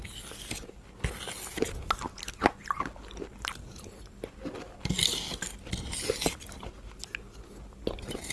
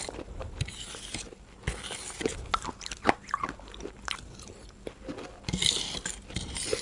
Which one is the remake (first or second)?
second